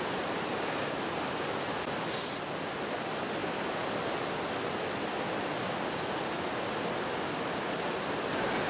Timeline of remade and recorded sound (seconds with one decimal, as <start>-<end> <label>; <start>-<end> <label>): 0.0-8.7 recorded